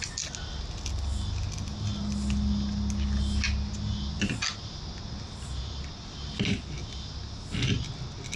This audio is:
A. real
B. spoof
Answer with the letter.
A